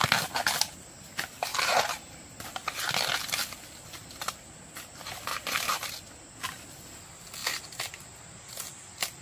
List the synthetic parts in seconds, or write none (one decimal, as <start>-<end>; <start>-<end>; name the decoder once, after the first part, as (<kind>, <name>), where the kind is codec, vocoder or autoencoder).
1.5-2.9 (vocoder, BigVGAN v2); 4.0-4.7; 5.3-5.9